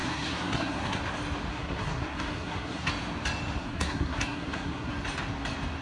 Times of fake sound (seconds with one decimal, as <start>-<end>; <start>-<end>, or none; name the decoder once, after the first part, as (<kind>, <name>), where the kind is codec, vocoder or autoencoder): 0.0-1.0 (codec, SNAC); 1.5-2.9; 3.6-4.9